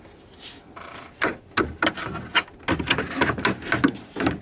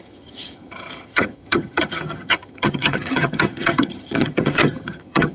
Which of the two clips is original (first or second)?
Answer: first